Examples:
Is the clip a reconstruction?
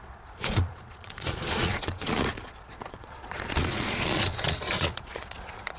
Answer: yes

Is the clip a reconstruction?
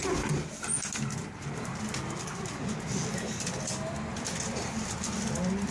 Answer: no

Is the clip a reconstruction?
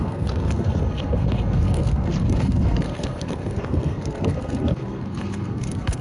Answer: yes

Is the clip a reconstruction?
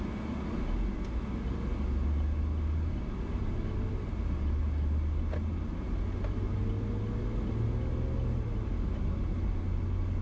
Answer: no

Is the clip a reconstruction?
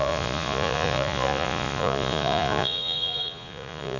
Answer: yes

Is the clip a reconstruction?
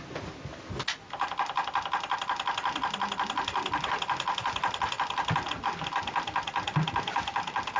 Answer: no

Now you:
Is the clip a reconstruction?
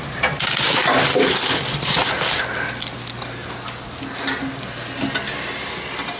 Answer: no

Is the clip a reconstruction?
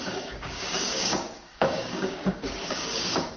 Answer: yes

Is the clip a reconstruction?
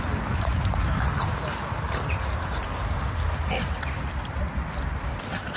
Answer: no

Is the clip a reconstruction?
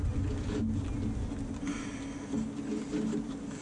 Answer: no